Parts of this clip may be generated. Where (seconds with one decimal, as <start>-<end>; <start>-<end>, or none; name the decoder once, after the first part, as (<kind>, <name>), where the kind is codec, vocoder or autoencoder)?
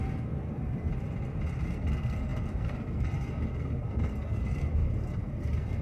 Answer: 0.0-0.9 (codec, SNAC); 1.6-5.8